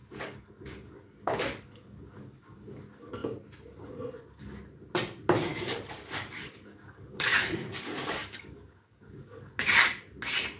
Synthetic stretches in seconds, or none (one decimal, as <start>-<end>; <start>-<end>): 0.0-2.8; 5.5-9.5